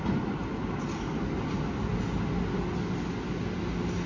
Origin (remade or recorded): recorded